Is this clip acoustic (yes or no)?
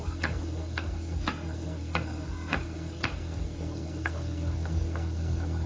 no